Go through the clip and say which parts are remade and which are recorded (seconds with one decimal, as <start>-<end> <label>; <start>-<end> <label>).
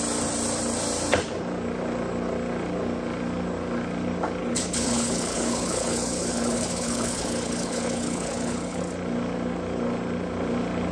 0.0-4.4 recorded; 4.4-8.8 remade; 8.8-10.9 recorded